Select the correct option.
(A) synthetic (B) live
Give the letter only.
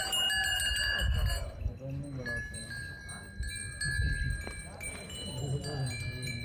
B